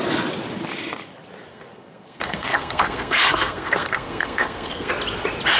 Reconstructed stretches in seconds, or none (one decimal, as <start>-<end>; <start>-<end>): 1.5-4.9